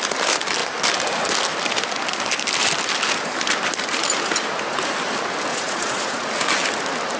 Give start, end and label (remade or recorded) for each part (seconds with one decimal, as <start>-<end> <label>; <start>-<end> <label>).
0.0-5.5 recorded; 5.5-6.3 remade; 6.3-7.2 recorded